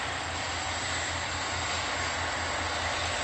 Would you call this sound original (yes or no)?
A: yes